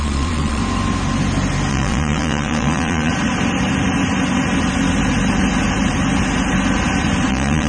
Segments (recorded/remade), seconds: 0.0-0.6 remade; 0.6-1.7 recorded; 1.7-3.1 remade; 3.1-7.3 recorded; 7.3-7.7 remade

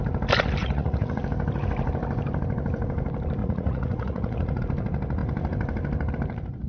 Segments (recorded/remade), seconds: 0.0-0.6 recorded; 0.6-1.2 remade; 1.2-3.4 recorded; 3.4-4.6 remade; 4.6-6.7 recorded

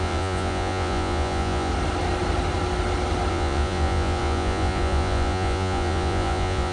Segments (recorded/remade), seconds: 0.0-1.7 remade; 1.7-3.3 recorded; 3.3-6.7 remade